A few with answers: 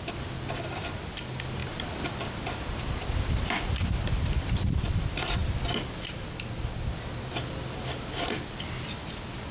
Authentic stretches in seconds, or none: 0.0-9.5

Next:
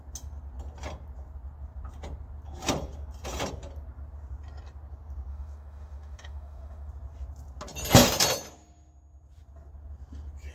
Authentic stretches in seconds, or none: 0.0-5.3; 6.9-10.5

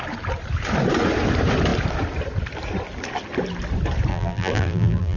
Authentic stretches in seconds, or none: 0.0-4.1

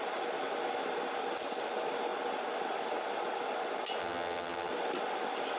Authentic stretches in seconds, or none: 0.0-4.0; 4.7-5.6

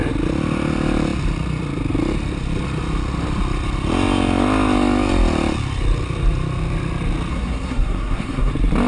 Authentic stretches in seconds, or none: 0.0-7.3; 8.5-8.9

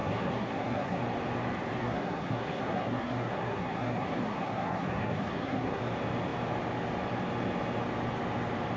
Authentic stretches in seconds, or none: 1.0-1.8; 5.8-8.8

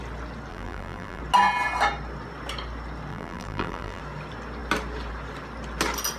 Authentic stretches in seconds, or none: 0.0-0.5; 1.2-3.1; 4.0-6.2